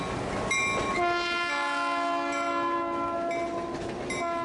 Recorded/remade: recorded